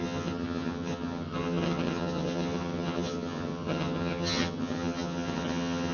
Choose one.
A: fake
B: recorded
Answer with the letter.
A